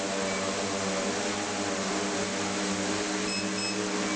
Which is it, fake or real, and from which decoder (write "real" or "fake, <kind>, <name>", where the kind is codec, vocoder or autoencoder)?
real